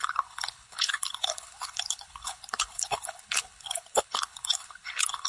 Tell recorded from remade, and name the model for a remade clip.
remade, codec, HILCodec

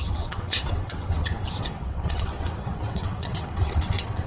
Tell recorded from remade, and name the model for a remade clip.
remade, vocoder, WaveNeXt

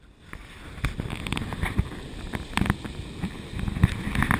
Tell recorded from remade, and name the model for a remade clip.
recorded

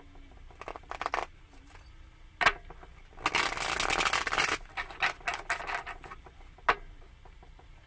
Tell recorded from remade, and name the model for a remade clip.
recorded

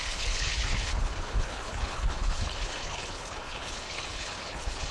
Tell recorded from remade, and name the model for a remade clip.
remade, codec, HILCodec